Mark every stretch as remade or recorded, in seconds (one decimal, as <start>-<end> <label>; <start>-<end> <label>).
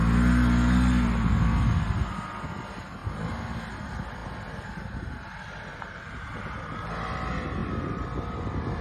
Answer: 0.0-5.7 recorded; 5.7-6.4 remade; 6.4-8.8 recorded